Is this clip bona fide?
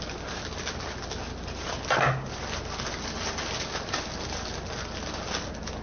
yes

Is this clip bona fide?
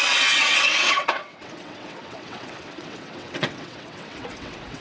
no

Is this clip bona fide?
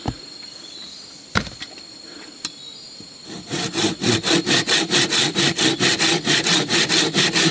yes